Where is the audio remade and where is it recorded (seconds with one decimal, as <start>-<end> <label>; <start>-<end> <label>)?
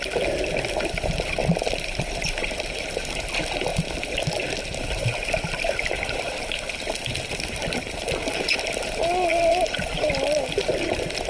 0.0-1.4 recorded; 1.4-3.2 remade; 3.2-3.7 recorded; 3.7-7.0 remade; 7.0-9.3 recorded; 9.3-10.2 remade; 10.2-11.3 recorded